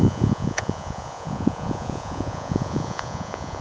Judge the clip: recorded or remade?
remade